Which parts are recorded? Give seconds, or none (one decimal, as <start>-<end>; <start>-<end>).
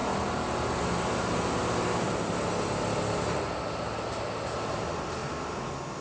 0.0-6.0